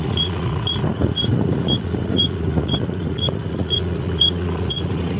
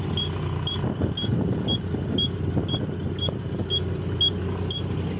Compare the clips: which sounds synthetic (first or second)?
first